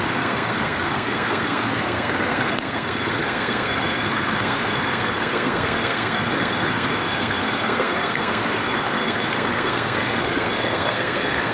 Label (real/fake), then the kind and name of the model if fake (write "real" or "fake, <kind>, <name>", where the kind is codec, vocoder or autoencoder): fake, codec, SNAC